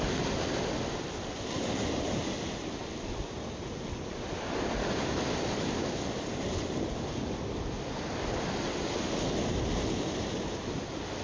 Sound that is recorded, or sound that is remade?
recorded